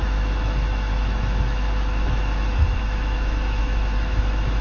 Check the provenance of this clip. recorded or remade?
remade